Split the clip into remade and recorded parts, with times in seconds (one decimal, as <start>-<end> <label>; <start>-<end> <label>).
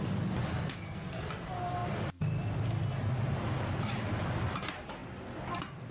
0.0-0.5 recorded; 0.5-1.3 remade; 1.3-5.9 recorded